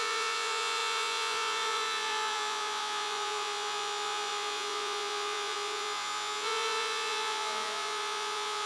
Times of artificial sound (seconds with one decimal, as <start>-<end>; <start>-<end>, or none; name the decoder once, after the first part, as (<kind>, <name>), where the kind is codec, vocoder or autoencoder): 0.0-8.7 (vocoder, Vocos)